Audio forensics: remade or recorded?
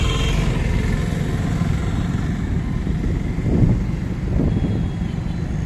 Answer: recorded